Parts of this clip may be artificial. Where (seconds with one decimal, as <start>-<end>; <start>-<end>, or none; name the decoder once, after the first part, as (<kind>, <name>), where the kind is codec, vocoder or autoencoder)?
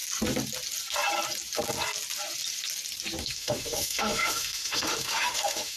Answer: 3.2-5.8 (autoencoder, DAC-VAE)